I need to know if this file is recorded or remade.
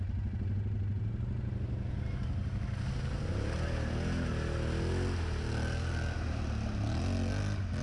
recorded